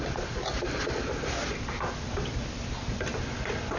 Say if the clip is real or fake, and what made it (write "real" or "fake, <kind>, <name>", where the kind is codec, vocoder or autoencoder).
real